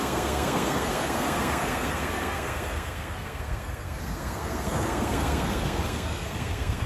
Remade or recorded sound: remade